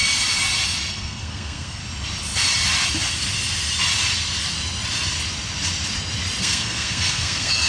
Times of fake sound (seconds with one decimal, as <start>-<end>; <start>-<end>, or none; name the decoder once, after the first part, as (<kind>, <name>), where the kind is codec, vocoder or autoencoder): 0.9-1.8 (codec, SNAC); 6.4-7.7